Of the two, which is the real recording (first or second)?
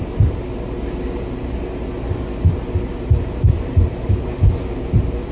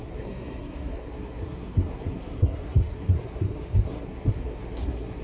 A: first